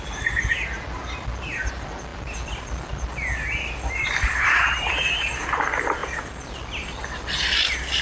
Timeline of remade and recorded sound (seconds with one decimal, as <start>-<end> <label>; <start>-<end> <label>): 0.0-8.0 recorded